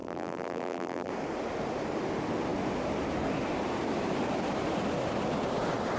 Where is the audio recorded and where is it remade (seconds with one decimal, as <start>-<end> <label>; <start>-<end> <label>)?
0.0-1.1 remade; 1.1-6.0 recorded

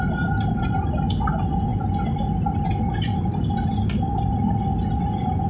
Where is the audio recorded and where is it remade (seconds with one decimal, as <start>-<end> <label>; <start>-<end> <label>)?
0.0-5.5 recorded